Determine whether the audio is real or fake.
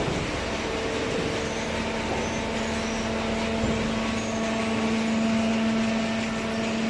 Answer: real